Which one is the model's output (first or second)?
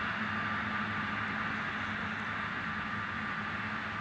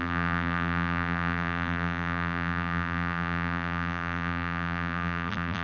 second